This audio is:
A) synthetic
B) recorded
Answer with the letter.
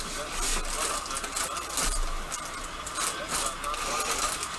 B